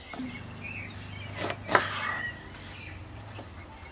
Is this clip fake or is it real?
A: real